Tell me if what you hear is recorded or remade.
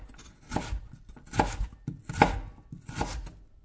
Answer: recorded